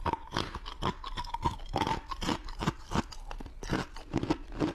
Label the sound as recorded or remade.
recorded